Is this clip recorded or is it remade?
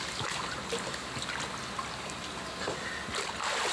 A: recorded